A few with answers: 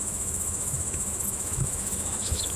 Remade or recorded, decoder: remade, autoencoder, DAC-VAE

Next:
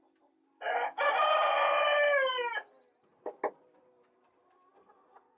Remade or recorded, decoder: recorded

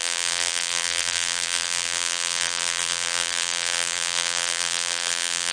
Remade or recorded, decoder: remade, vocoder, BigVGAN v2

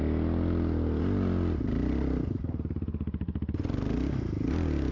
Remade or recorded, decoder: recorded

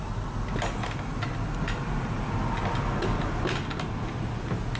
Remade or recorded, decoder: recorded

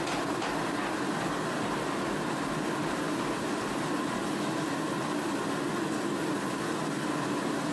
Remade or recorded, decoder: recorded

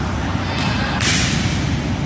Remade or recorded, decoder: recorded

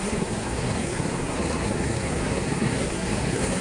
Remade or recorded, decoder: remade, codec, SNAC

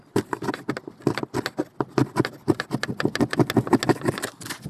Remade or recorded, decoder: recorded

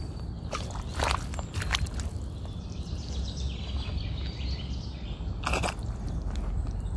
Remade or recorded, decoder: recorded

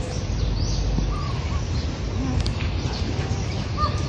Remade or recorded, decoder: recorded